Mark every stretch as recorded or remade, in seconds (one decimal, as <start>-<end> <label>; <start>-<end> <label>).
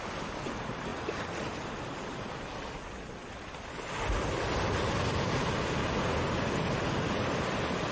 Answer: 0.0-0.9 remade; 0.9-2.0 recorded; 2.0-2.5 remade; 2.5-4.7 recorded; 4.7-5.8 remade; 5.8-7.9 recorded